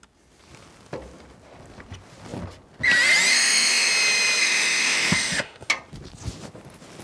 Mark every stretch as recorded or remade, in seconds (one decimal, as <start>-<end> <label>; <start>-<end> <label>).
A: 0.0-3.3 recorded; 3.3-3.9 remade; 3.9-4.4 recorded; 4.4-5.7 remade; 5.7-7.0 recorded